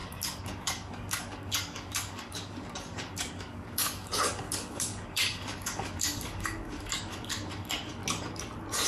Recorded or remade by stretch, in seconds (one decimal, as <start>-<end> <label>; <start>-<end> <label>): 0.0-8.0 remade; 8.0-8.9 recorded